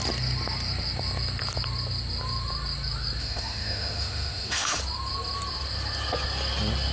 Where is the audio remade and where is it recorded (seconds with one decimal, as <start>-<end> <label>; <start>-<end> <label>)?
0.0-3.2 recorded; 3.2-4.8 remade; 4.8-6.9 recorded